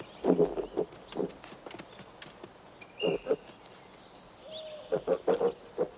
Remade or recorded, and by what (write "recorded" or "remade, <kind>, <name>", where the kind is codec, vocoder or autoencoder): recorded